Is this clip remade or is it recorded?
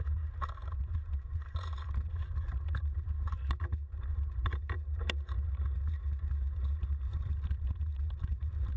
remade